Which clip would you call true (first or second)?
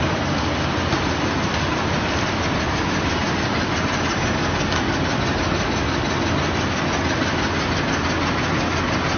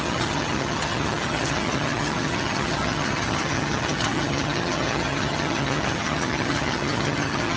first